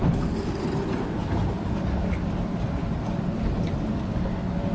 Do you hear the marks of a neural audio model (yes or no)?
no